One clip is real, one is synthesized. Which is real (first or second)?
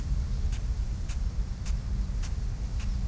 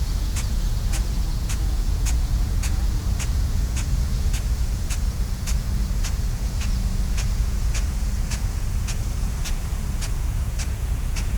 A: first